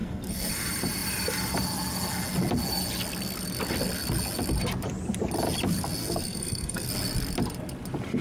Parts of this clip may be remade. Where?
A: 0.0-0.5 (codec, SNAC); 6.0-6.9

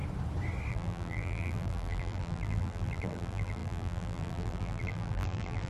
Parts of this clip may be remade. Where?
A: 0.7-5.7 (vocoder, BigVGAN v2)

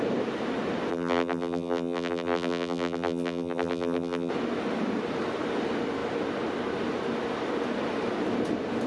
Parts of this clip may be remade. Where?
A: 0.9-4.3 (vocoder, BigVGAN v2)

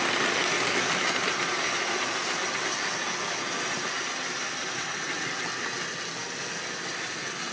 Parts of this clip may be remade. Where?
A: 4.6-5.1 (vocoder, Vocos)

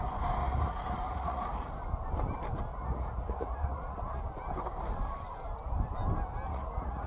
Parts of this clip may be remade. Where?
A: 0.4-1.7 (vocoder, Vocos); 2.7-4.2; 6.5-7.1

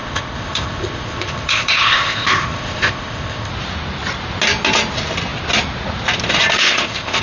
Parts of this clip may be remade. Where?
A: 0.0-3.5 (codec, ZipCodec); 6.6-7.2